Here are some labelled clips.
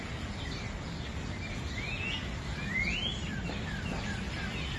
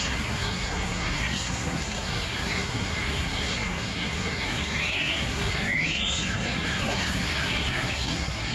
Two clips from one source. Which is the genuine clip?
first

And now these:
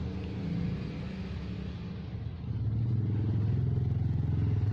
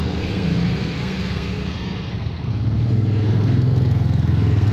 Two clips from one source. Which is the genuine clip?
first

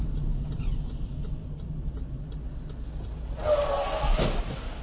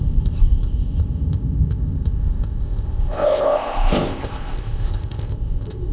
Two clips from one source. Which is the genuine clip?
first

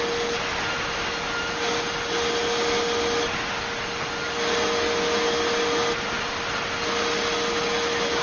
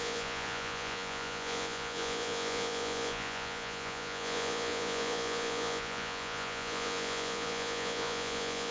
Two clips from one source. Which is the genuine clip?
first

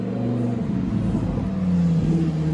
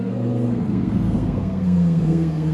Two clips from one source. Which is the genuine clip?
first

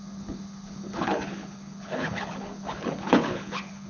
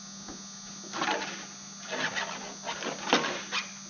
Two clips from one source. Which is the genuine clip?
second